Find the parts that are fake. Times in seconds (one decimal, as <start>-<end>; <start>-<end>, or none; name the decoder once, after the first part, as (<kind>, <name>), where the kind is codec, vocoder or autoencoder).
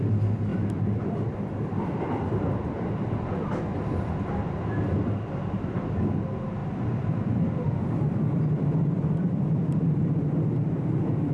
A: 0.5-2.5 (vocoder, BigVGAN v2); 6.6-9.7